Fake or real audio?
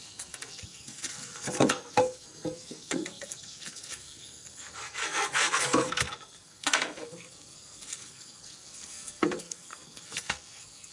fake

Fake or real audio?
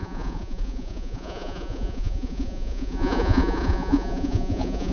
fake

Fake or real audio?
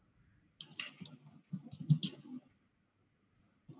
real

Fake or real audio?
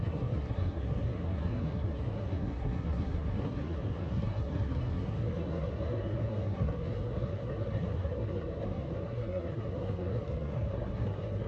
fake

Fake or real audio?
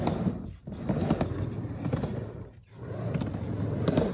real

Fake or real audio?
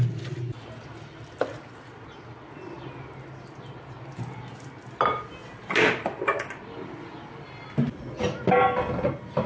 real